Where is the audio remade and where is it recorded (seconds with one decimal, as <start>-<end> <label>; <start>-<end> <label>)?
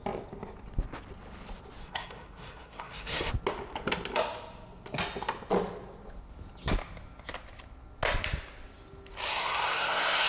0.0-1.8 recorded; 1.8-3.3 remade; 3.3-9.3 recorded; 9.3-10.3 remade